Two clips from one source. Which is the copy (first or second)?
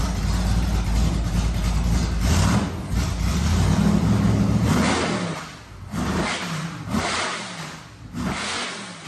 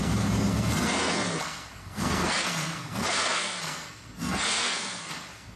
second